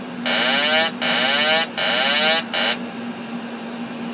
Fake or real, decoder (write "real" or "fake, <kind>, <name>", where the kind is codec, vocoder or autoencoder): real